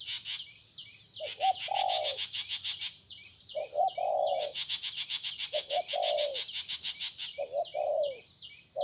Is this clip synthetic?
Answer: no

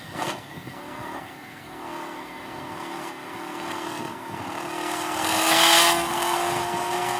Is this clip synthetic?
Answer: yes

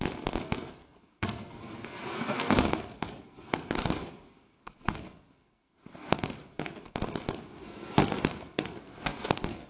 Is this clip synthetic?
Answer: yes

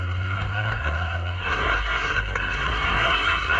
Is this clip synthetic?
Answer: yes